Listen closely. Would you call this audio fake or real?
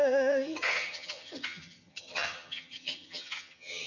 fake